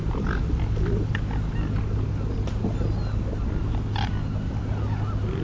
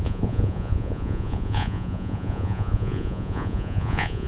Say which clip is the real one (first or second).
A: first